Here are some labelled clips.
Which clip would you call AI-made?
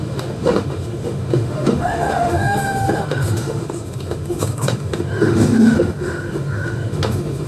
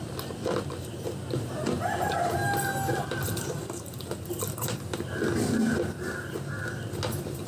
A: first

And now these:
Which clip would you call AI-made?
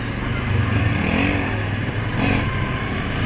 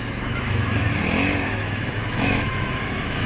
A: second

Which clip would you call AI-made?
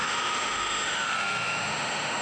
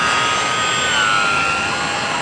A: first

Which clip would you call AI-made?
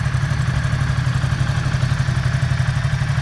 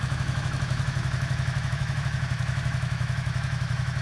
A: second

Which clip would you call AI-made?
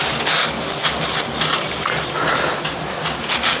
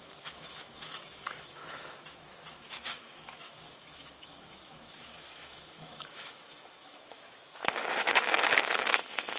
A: second